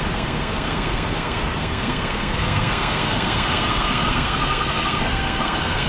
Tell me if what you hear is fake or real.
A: fake